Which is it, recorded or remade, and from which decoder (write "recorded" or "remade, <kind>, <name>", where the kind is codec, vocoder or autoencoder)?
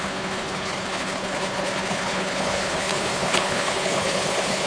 remade, codec, HILCodec